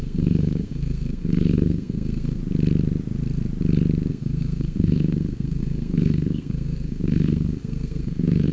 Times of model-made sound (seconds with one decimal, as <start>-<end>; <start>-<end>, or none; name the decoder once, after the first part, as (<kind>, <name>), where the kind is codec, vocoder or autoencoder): 0.0-2.4 (codec, SNAC); 4.1-8.5